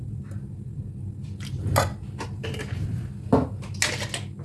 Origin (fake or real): real